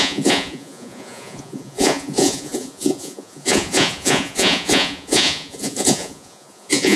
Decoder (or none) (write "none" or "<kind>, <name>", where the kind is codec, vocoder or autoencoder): vocoder, Vocos